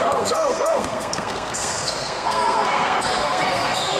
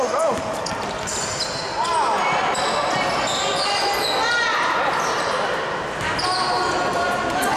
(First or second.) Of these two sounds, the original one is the second